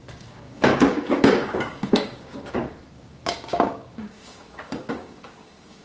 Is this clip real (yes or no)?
no